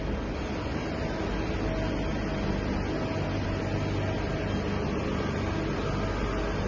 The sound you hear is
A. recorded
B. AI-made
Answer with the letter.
A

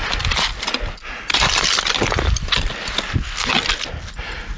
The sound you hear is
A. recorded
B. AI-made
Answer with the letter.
A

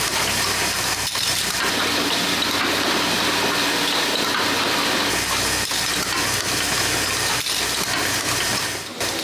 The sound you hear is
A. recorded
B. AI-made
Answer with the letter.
A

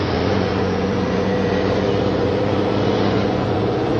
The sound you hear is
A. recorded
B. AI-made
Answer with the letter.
B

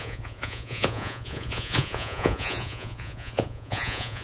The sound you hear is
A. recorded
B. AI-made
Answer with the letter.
B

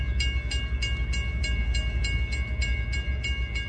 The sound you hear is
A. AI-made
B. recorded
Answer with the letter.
B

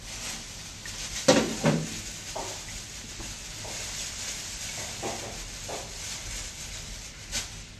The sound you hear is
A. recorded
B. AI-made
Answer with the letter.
A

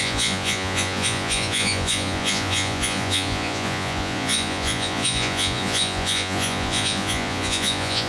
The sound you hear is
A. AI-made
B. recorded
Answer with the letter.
A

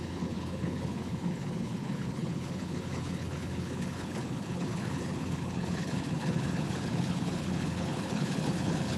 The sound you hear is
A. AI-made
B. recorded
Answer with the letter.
A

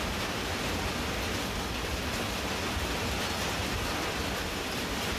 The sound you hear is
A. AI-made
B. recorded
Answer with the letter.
B